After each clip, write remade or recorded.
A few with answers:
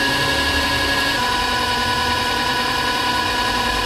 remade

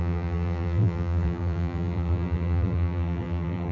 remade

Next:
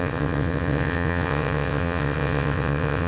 remade